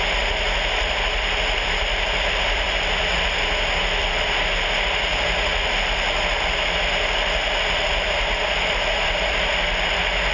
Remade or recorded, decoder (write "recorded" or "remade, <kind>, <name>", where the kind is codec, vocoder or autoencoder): recorded